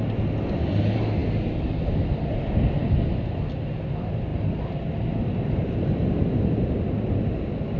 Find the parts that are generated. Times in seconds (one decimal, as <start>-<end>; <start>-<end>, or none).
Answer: none